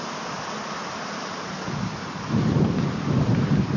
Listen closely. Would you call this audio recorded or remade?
recorded